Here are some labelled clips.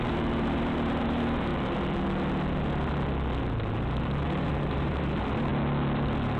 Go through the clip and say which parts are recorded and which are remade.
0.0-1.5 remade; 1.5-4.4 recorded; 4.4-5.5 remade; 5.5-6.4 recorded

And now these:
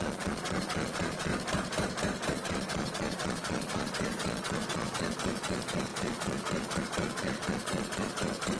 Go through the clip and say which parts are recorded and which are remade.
0.0-1.3 remade; 1.3-2.3 recorded; 2.3-8.6 remade